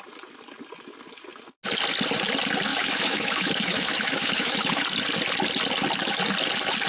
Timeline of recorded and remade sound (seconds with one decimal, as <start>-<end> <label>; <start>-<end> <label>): 0.0-2.7 recorded; 2.7-4.7 remade; 4.7-6.9 recorded